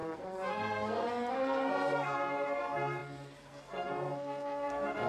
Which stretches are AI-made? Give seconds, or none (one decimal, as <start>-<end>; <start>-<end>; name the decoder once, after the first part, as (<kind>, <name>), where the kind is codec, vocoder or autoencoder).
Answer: 0.0-5.1 (codec, SNAC)